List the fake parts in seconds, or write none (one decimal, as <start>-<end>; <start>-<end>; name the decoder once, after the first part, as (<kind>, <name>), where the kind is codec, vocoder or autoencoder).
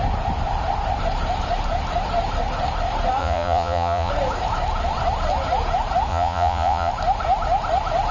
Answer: 3.2-4.1 (vocoder, Vocos); 6.1-6.9